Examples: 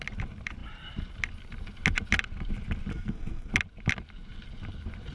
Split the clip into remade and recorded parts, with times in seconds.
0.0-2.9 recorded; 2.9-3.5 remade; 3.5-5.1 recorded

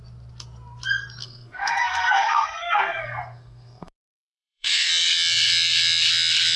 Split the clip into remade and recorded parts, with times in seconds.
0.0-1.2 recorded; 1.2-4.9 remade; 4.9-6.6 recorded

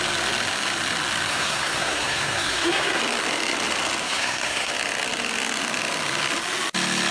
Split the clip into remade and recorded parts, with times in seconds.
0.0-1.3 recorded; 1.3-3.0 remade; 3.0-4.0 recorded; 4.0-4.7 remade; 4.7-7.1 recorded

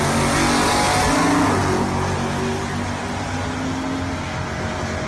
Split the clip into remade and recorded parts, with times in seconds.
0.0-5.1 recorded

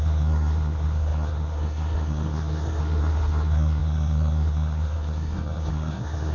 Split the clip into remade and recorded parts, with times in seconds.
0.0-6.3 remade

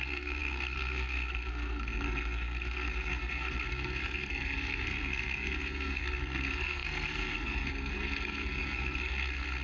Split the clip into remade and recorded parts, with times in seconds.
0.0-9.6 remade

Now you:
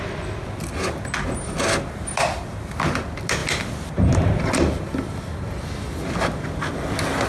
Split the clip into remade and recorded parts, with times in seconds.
0.0-7.3 recorded